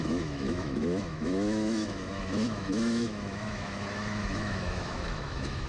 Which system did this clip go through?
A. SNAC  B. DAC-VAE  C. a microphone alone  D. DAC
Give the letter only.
B